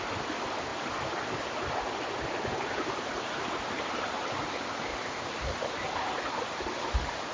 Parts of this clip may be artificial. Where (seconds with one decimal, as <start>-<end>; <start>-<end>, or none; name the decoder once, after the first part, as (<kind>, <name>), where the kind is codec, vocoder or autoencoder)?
none